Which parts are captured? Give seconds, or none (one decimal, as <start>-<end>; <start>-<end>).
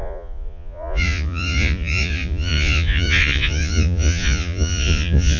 none